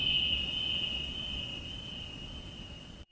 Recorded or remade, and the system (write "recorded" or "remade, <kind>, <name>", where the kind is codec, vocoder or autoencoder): remade, vocoder, WaveNeXt